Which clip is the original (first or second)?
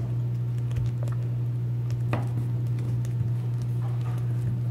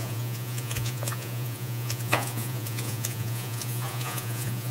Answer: first